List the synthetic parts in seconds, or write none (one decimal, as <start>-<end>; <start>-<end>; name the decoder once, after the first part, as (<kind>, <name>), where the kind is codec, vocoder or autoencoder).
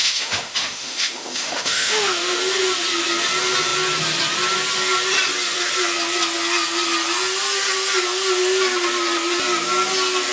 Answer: 0.0-2.4 (autoencoder, DAC-VAE)